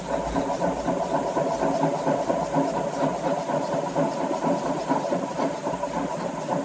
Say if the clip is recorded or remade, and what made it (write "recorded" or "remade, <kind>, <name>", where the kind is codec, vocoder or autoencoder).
recorded